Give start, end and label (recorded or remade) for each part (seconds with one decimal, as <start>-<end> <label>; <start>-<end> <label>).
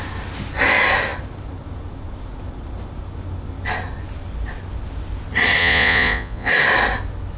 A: 0.0-5.6 recorded; 5.6-6.5 remade; 6.5-7.4 recorded